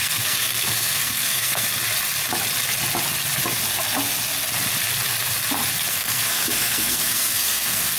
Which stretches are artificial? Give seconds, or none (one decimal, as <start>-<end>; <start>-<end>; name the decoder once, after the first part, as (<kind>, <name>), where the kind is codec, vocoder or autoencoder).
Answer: 0.0-1.7 (codec, SNAC); 5.9-8.0

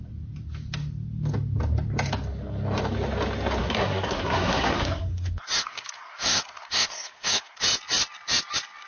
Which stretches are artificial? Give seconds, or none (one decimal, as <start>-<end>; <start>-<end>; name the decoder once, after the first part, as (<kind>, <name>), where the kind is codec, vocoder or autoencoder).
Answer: 3.6-7.6 (codec, SNAC)

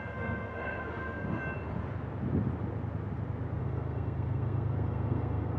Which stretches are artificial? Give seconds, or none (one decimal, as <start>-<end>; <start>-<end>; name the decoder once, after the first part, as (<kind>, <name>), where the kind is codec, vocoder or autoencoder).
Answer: 0.0-1.4 (codec, SNAC); 3.6-5.6

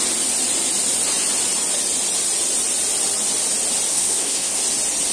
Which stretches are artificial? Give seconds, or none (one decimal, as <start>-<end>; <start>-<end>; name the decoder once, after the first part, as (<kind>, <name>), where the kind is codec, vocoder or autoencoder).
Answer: 3.9-4.6 (codec, SNAC)

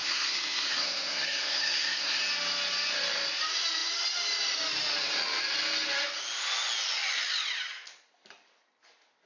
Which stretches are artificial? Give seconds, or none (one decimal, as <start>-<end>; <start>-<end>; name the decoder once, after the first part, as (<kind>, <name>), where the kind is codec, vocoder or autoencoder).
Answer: 0.0-2.2 (codec, SNAC)